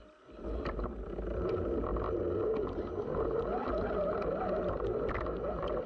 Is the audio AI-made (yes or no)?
no